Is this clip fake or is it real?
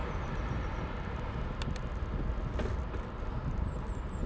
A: real